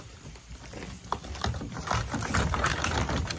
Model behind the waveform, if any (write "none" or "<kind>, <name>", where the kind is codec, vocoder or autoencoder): vocoder, BigVGAN v2